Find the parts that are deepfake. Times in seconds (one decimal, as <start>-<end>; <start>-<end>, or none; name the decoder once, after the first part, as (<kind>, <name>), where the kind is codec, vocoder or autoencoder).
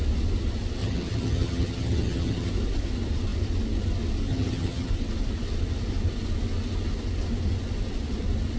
0.8-2.5 (vocoder, HiFi-GAN); 4.3-4.9